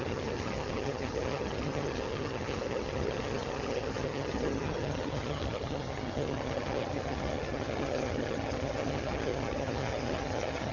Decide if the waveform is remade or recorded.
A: remade